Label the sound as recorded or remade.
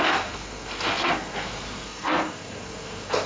remade